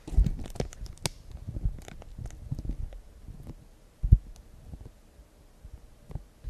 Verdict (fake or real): real